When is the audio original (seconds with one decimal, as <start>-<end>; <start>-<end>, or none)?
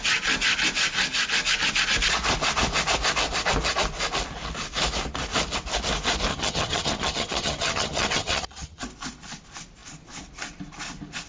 0.0-6.3; 8.8-11.3